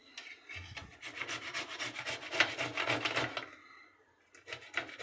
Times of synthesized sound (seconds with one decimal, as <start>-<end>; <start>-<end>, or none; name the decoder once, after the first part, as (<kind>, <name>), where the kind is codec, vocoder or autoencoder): none